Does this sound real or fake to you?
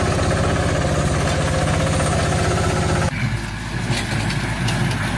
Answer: real